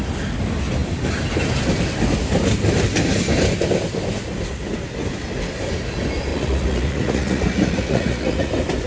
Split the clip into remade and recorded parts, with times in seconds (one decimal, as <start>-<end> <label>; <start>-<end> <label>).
0.0-6.3 recorded; 6.3-8.5 remade; 8.5-8.9 recorded